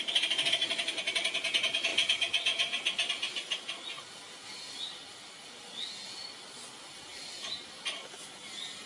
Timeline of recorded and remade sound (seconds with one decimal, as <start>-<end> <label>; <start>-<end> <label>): 0.0-8.9 recorded